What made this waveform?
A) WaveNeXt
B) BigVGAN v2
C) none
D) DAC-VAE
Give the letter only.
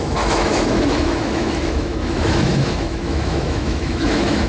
D